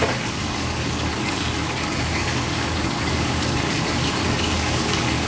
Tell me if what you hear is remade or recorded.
remade